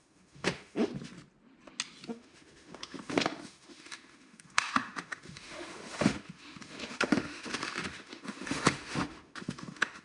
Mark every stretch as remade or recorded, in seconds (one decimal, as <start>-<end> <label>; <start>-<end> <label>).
0.0-0.9 remade; 0.9-2.1 recorded; 2.1-10.0 remade